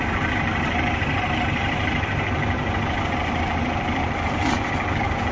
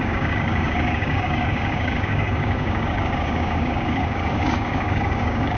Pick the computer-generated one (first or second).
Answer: second